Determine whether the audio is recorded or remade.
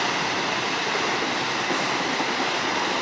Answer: recorded